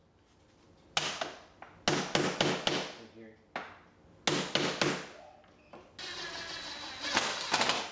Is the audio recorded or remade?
recorded